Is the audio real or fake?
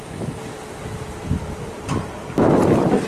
real